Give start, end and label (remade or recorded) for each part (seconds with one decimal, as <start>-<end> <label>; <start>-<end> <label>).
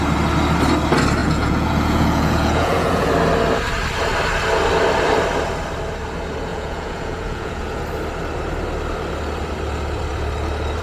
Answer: 0.0-1.2 recorded; 1.2-3.1 remade; 3.1-6.5 recorded; 6.5-7.8 remade; 7.8-10.8 recorded